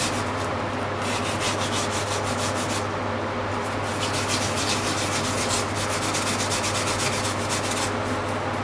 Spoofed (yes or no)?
no